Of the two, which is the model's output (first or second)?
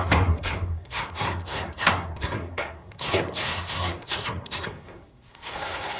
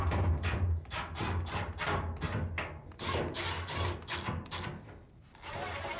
first